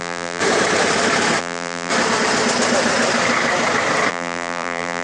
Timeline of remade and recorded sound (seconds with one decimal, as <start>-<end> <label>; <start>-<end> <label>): 0.0-0.4 remade; 0.4-1.4 recorded; 1.4-1.9 remade; 1.9-4.1 recorded; 4.1-5.0 remade